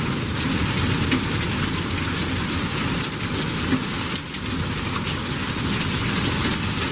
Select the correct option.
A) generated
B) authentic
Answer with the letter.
B